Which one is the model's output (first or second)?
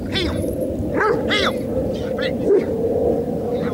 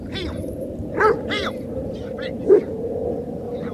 second